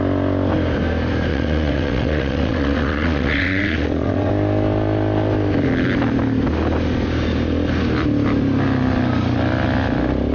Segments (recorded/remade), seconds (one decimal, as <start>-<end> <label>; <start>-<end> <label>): 0.0-1.3 recorded; 1.3-4.3 remade; 4.3-10.3 recorded